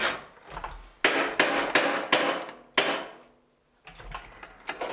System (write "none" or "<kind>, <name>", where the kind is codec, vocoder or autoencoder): none